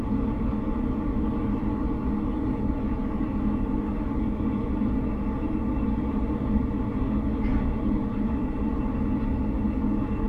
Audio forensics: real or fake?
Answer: real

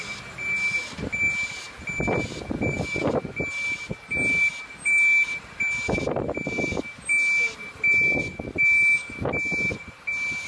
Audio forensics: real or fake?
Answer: real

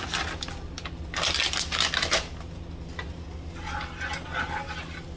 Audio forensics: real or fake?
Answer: real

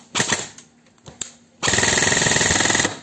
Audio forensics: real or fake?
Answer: real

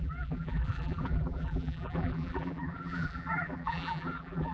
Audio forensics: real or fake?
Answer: fake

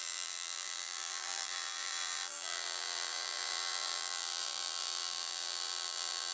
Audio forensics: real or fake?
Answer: fake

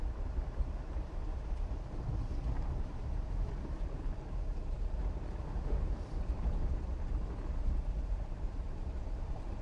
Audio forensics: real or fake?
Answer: fake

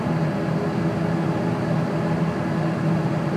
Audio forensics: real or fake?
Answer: fake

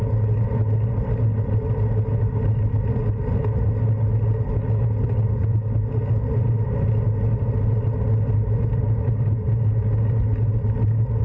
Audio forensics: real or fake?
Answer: real